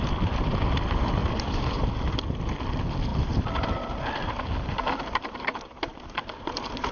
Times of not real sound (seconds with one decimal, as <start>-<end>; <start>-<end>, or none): 0.0-3.1; 4.9-5.9; 6.5-6.9